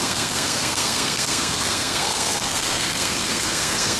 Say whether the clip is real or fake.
fake